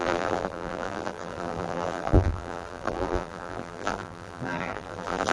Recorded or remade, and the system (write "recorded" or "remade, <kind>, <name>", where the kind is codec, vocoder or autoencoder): remade, vocoder, BigVGAN v2